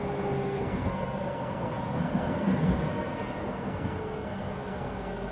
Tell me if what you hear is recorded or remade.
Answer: remade